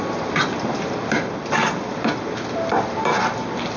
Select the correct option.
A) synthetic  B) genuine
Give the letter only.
B